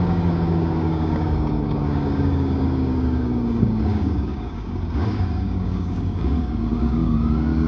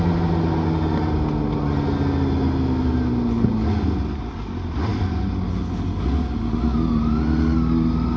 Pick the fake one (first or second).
first